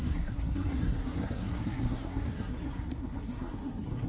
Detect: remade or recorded remade